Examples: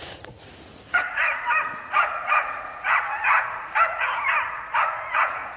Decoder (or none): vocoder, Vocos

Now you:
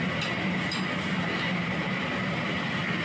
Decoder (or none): none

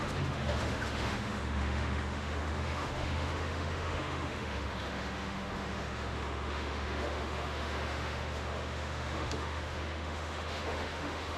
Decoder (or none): autoencoder, DAC-VAE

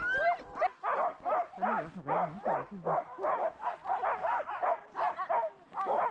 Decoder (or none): none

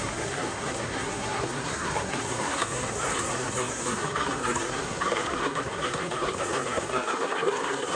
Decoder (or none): codec, SNAC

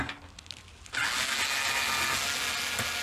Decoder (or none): none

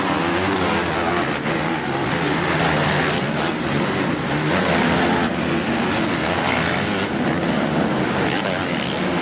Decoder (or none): none